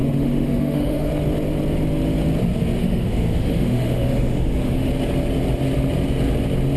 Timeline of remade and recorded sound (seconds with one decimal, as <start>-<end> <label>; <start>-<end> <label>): 0.0-1.1 remade; 1.1-2.8 recorded; 2.8-4.9 remade; 4.9-6.8 recorded